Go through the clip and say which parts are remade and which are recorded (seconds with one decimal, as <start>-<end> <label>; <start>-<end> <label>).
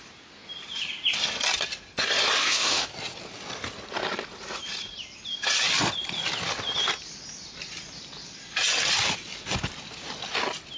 0.0-2.4 recorded; 2.4-2.9 remade; 2.9-10.8 recorded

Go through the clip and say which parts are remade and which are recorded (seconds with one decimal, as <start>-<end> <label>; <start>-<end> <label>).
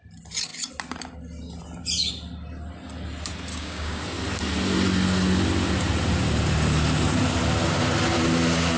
0.0-3.5 recorded; 3.5-4.0 remade; 4.0-8.8 recorded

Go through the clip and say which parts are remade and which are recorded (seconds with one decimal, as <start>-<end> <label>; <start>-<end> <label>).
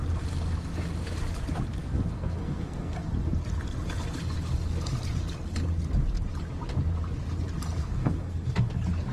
0.0-1.8 recorded; 1.8-3.1 remade; 3.1-7.8 recorded; 7.8-8.7 remade; 8.7-9.1 recorded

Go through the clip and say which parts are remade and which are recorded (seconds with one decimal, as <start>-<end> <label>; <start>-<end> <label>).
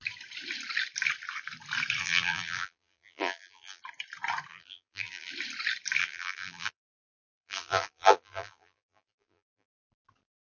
0.0-2.0 recorded; 2.0-3.8 remade; 3.8-4.5 recorded; 4.5-5.3 remade; 5.3-6.0 recorded; 6.0-9.8 remade; 9.8-10.4 recorded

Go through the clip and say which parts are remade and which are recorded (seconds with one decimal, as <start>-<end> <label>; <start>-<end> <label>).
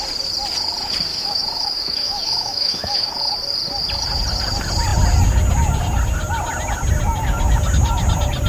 0.0-1.1 recorded; 1.1-3.1 remade; 3.1-8.5 recorded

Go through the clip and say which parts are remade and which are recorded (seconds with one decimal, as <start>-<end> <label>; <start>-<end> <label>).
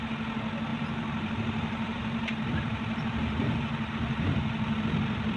0.0-0.7 recorded; 0.7-3.9 remade; 3.9-5.4 recorded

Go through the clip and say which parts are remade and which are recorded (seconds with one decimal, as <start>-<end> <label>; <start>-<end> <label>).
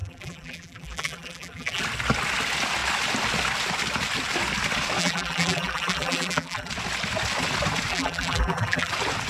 0.0-1.8 remade; 1.8-5.0 recorded; 5.0-6.7 remade; 6.7-7.9 recorded; 7.9-8.9 remade; 8.9-9.3 recorded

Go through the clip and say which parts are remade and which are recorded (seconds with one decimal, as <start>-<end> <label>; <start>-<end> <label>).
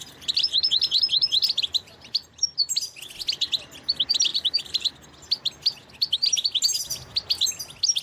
0.0-0.7 remade; 0.7-1.7 recorded; 1.7-2.7 remade; 2.7-4.3 recorded; 4.3-4.9 remade; 4.9-8.0 recorded